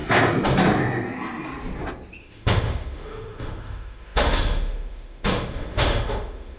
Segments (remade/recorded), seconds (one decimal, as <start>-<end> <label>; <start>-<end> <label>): 0.0-2.2 recorded; 2.2-6.6 remade